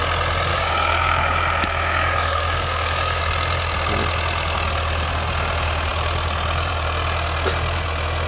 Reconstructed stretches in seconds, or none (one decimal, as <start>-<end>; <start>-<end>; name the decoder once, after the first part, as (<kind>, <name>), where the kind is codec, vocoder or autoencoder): 0.5-3.2 (codec, DAC)